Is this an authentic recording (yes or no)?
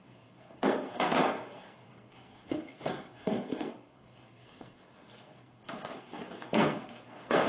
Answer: no